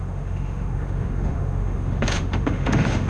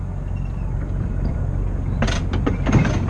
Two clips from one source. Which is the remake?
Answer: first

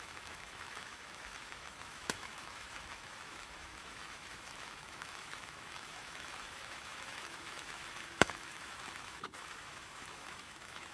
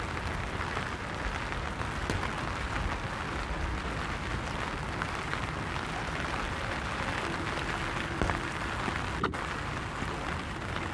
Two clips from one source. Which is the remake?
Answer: first